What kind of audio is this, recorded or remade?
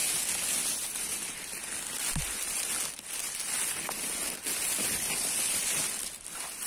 recorded